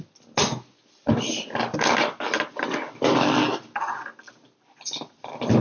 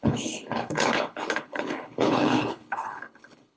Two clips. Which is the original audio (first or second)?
first